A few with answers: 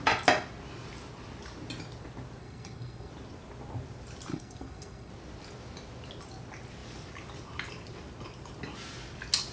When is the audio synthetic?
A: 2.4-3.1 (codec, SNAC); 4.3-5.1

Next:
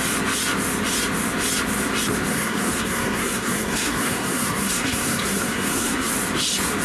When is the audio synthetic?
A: 2.3-6.1 (codec, SNAC)

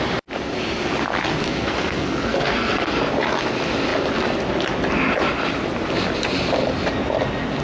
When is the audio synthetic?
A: 1.5-3.0 (codec, SNAC)